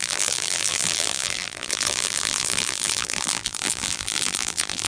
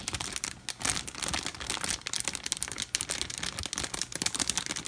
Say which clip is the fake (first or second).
first